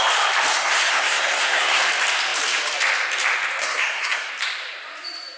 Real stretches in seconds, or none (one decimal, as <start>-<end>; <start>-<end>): 0.0-0.5; 1.8-3.6; 4.3-5.4